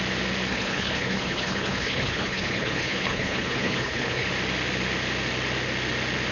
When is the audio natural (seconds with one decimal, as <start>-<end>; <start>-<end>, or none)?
0.0-0.5; 4.3-6.3